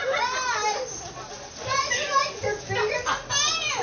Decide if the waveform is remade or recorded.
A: recorded